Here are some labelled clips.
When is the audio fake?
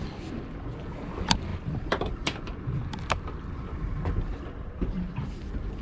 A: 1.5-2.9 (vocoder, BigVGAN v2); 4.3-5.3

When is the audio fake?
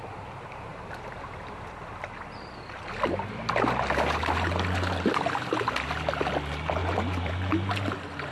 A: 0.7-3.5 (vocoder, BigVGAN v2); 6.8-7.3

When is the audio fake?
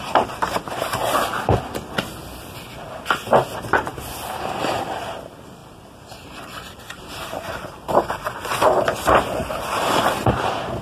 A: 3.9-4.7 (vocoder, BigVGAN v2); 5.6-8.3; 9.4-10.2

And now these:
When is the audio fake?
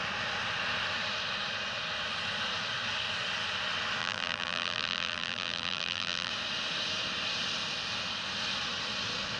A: 4.0-6.3 (vocoder, BigVGAN v2)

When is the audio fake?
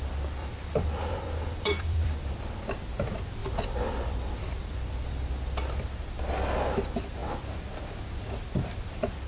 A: 0.4-2.3 (vocoder, BigVGAN v2); 3.4-5.4